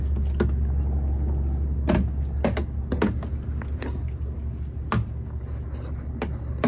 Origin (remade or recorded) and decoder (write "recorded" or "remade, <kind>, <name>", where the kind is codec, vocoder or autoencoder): recorded